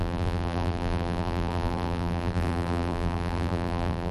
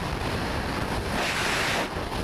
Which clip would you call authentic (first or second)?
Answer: second